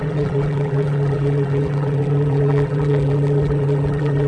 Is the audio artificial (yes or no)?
yes